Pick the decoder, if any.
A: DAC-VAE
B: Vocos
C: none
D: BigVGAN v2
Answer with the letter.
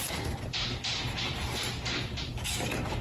D